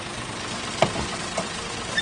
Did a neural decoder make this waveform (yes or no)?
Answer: yes